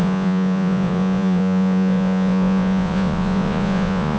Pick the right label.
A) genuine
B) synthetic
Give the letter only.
B